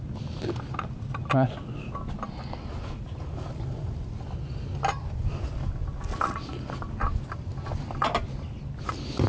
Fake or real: real